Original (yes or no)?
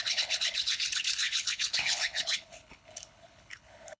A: no